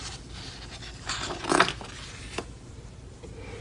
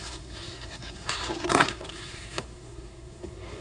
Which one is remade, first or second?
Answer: second